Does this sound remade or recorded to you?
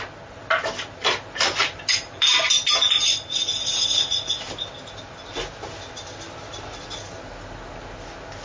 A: recorded